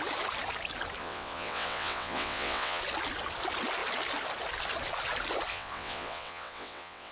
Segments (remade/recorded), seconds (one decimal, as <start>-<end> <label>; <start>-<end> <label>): 0.0-1.0 recorded; 1.0-2.8 remade; 2.8-5.5 recorded; 5.5-7.1 remade

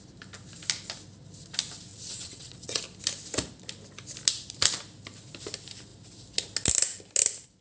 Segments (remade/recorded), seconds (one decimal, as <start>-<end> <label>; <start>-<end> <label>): 0.0-1.9 recorded; 1.9-2.8 remade; 2.8-7.6 recorded

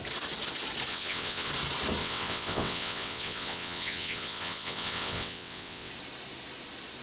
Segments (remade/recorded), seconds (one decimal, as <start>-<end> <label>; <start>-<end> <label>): 0.0-0.9 recorded; 0.9-1.5 remade; 1.5-2.0 recorded; 2.0-5.9 remade; 5.9-7.0 recorded

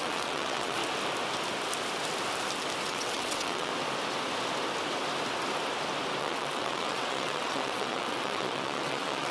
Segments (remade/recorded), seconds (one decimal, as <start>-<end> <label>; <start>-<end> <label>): 0.0-0.8 remade; 0.8-2.8 recorded; 2.8-3.7 remade; 3.7-6.2 recorded; 6.2-9.3 remade

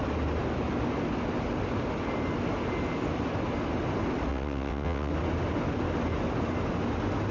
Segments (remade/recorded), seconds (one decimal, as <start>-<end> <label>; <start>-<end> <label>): 0.0-4.3 recorded; 4.3-5.1 remade; 5.1-7.3 recorded

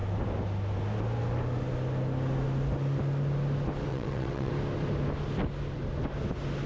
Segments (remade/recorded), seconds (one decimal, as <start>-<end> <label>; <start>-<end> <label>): 0.0-3.9 recorded; 3.9-4.5 remade; 4.5-6.7 recorded

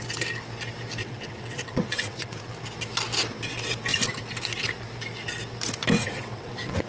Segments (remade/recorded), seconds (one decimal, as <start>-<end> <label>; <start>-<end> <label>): 0.0-1.0 recorded; 1.0-2.4 remade; 2.4-6.0 recorded; 6.0-6.9 remade

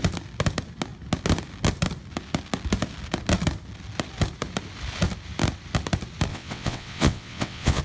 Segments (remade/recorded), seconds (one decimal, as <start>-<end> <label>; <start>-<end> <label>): 0.0-6.3 recorded; 6.3-7.8 remade